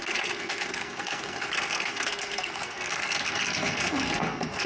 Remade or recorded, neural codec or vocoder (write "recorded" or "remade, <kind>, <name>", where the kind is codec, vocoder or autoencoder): remade, codec, SNAC